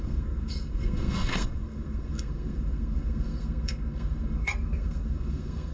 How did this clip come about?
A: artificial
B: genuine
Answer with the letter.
A